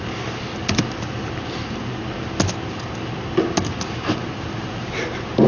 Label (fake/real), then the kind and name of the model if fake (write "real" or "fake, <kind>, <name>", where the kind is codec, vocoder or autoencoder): real